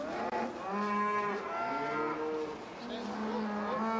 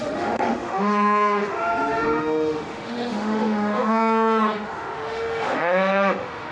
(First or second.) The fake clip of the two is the second